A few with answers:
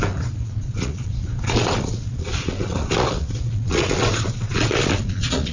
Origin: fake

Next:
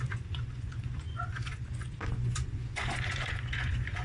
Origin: fake